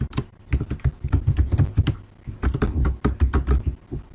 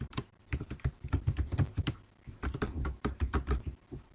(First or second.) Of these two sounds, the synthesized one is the second